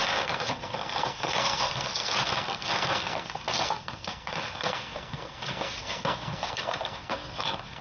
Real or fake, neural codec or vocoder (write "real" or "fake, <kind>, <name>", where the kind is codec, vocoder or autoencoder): fake, codec, SNAC